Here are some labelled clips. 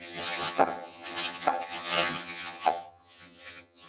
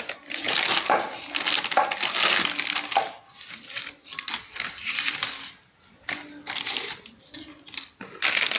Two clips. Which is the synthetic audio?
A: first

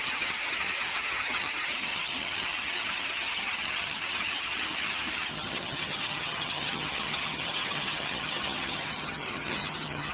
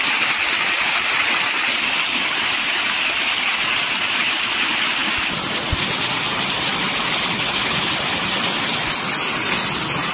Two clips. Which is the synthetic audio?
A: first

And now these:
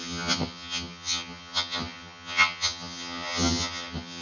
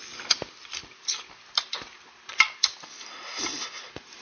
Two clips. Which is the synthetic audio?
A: first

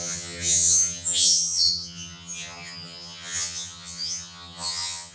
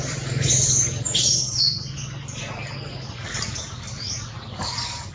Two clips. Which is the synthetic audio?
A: first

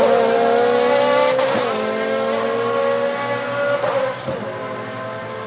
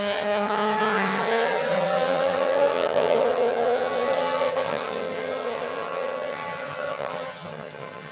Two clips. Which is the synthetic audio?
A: second